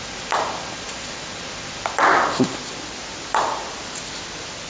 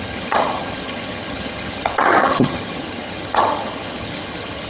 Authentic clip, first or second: first